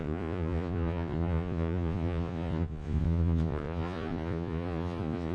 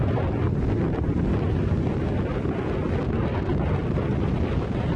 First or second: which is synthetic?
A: first